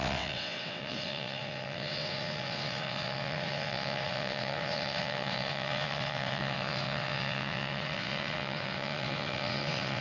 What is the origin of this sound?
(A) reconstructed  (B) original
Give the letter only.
A